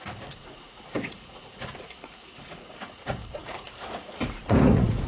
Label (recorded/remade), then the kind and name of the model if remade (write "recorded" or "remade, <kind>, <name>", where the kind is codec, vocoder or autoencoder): remade, vocoder, Vocos